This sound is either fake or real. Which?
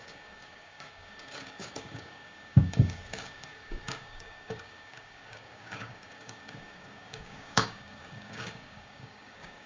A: fake